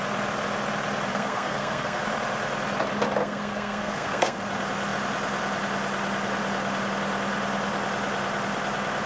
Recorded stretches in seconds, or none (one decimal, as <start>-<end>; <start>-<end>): 0.0-1.1; 2.0-3.2; 4.4-9.1